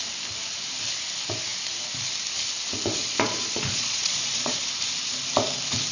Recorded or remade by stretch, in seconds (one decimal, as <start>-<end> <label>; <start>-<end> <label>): 0.0-3.0 recorded; 3.0-4.5 remade; 4.5-5.9 recorded

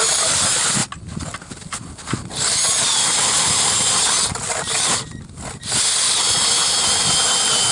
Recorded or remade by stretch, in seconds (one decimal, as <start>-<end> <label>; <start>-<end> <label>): 0.0-7.7 recorded

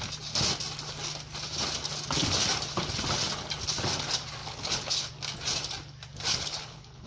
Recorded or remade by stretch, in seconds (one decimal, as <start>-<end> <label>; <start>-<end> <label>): 0.0-4.4 recorded; 4.4-5.1 remade; 5.1-6.3 recorded; 6.3-7.1 remade

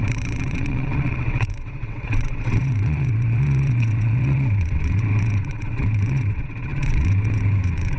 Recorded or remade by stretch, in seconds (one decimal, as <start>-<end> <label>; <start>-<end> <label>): 0.0-8.0 remade

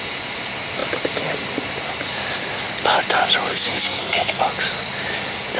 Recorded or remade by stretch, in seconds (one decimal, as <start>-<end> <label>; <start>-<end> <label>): 0.0-3.5 recorded; 3.5-4.4 remade; 4.4-5.6 recorded

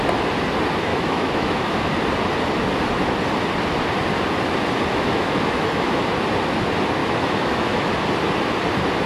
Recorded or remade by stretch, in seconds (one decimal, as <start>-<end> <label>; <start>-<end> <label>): 0.0-0.9 recorded; 0.9-1.8 remade; 1.8-4.9 recorded; 4.9-6.0 remade; 6.0-7.0 recorded; 7.0-7.9 remade; 7.9-9.1 recorded

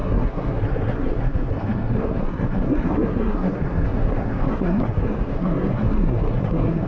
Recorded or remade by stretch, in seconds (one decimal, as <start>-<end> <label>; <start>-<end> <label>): 0.0-6.9 remade

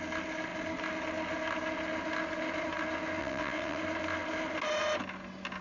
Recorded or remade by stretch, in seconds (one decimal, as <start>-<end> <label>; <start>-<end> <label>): 0.0-3.2 recorded; 3.2-3.8 remade; 3.8-5.6 recorded